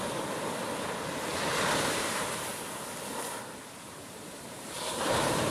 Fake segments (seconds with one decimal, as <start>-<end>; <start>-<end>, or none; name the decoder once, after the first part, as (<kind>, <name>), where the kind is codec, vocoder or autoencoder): 1.3-2.5 (vocoder, BigVGAN v2); 4.3-5.5